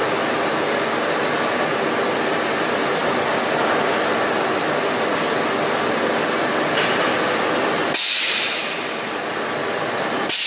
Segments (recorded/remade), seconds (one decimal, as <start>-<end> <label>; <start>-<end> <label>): 0.0-10.5 recorded